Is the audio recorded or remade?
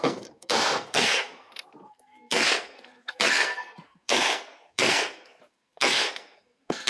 remade